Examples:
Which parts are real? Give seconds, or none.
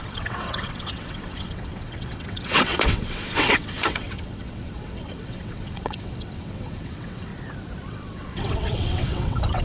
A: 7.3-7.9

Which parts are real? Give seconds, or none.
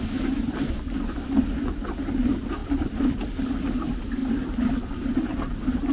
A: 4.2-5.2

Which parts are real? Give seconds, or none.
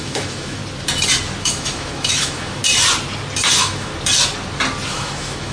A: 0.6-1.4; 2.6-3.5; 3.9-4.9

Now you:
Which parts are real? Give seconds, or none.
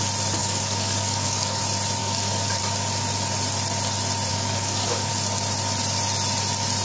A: 0.0-0.4; 1.6-2.0; 2.6-4.3; 5.1-6.8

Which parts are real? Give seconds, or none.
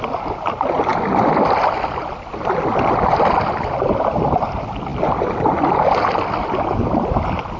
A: 0.0-7.6